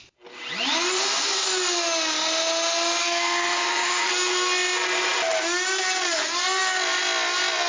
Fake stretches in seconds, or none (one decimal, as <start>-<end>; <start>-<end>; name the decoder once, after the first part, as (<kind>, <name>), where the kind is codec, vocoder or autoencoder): 3.0-4.1 (autoencoder, DAC-VAE)